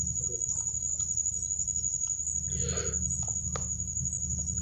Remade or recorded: recorded